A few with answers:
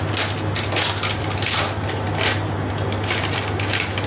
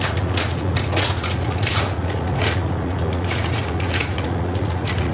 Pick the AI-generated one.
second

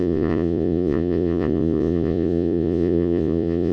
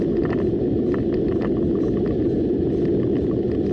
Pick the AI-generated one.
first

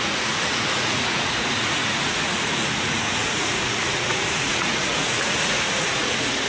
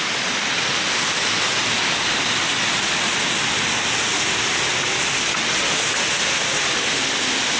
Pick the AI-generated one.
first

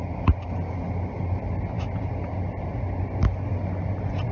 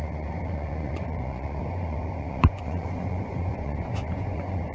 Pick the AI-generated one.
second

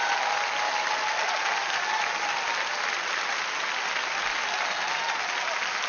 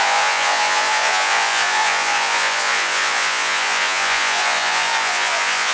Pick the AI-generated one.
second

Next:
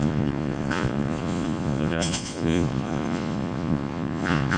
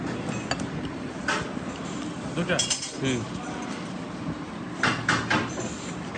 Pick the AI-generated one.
first